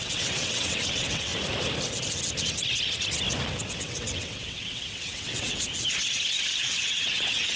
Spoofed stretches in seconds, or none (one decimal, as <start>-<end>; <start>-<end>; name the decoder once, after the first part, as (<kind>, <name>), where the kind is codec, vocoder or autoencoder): 0.0-1.3 (vocoder, WaveNeXt); 3.8-5.7; 6.5-7.6